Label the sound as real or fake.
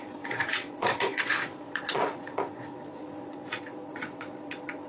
fake